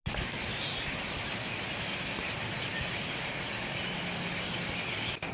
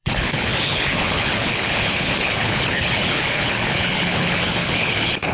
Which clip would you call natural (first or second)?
first